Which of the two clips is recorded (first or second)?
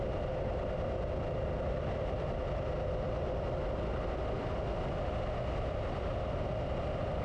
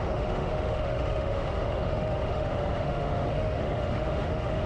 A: first